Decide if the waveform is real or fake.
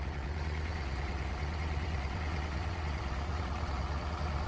fake